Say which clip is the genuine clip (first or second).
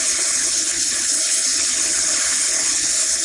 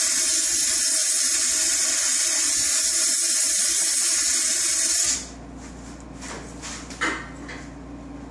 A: second